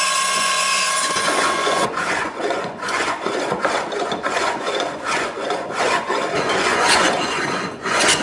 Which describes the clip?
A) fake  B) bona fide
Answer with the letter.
A